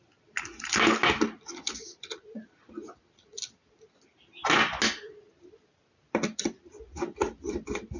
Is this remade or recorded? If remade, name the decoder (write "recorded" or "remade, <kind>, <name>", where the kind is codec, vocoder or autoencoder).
recorded